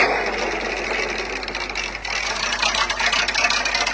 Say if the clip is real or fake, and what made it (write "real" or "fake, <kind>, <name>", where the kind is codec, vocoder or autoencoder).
real